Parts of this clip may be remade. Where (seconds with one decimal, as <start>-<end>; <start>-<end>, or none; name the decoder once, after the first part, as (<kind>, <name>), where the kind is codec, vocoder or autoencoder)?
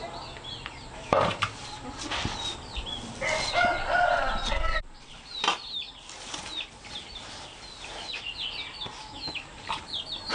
9.0-9.5 (autoencoder, DAC-VAE)